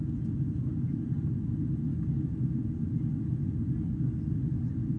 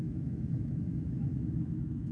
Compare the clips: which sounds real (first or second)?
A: first